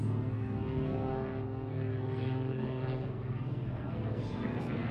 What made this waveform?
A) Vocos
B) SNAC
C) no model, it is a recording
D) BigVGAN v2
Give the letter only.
B